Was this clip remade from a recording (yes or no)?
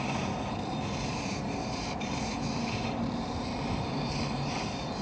yes